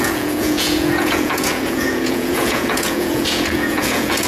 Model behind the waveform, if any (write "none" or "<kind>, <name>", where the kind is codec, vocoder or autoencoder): vocoder, Vocos